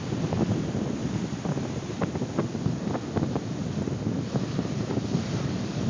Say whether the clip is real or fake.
real